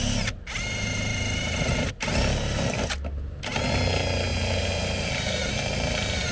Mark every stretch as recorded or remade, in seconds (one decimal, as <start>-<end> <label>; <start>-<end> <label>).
0.0-4.3 recorded; 4.3-6.3 remade

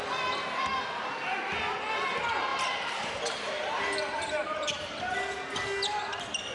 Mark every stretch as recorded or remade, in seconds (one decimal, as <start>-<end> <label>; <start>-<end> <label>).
0.0-2.5 recorded; 2.5-3.9 remade; 3.9-6.5 recorded

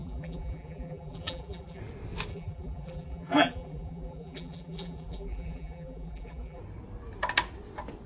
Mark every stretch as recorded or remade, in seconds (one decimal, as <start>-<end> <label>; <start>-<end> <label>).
0.0-1.8 remade; 1.8-2.3 recorded; 2.3-6.6 remade; 6.6-8.1 recorded

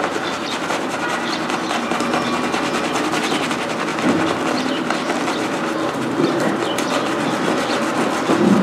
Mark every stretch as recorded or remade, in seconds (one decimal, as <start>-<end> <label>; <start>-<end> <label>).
0.0-0.7 recorded; 0.7-1.3 remade; 1.3-3.9 recorded; 3.9-6.3 remade; 6.3-8.6 recorded

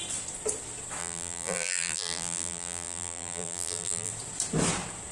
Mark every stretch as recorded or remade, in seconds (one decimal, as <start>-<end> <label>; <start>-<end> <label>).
0.0-1.0 recorded; 1.0-4.1 remade; 4.1-5.1 recorded

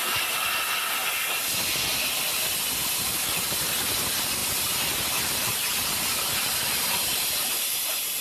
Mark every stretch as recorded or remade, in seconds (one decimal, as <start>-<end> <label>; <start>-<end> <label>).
0.0-4.4 recorded; 4.4-7.2 remade; 7.2-8.2 recorded